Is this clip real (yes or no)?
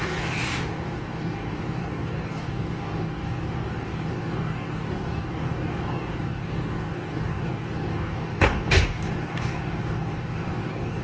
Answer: no